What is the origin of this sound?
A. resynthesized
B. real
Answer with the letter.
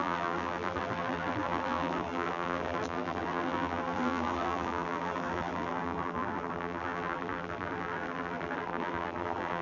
A